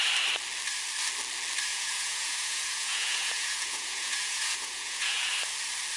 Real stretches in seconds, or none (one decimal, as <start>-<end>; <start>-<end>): 0.0-1.7; 5.3-6.0